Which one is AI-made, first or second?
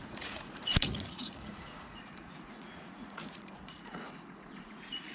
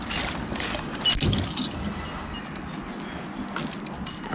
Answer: first